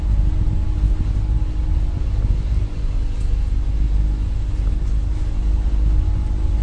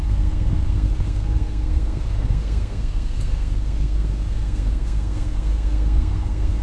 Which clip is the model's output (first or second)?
second